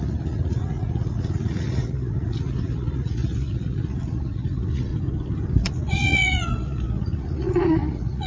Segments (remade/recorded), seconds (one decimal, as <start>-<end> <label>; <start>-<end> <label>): 0.0-4.9 remade; 4.9-5.5 recorded; 5.5-8.3 remade